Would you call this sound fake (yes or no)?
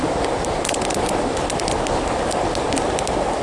no